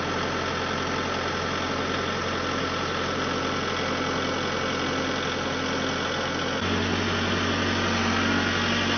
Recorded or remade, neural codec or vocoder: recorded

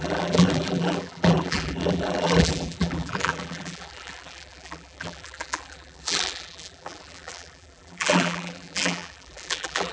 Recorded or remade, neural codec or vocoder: remade, vocoder, BigVGAN v2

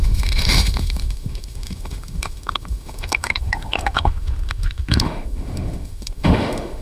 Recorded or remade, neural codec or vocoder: remade, autoencoder, DAC-VAE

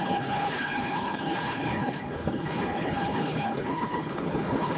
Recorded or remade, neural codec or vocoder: remade, codec, HILCodec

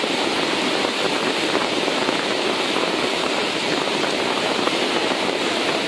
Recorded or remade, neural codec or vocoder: recorded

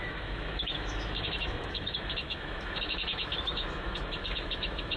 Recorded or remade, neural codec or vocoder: remade, autoencoder, DAC-VAE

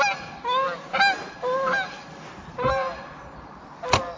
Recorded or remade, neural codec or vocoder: recorded